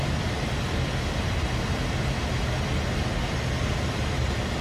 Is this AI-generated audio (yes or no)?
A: no